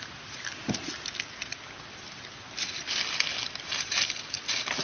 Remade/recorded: recorded